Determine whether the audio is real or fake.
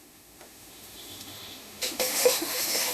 fake